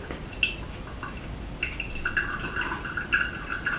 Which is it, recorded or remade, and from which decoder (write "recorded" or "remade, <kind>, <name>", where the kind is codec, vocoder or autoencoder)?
recorded